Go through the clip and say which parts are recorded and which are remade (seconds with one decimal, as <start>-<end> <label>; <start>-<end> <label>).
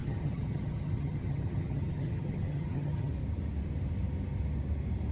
0.0-3.1 remade; 3.1-5.1 recorded